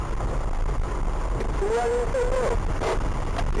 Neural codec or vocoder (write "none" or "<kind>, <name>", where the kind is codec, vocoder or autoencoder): none